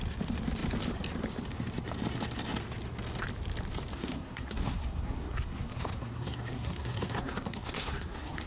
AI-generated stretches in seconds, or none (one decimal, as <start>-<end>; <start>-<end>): 3.9-8.5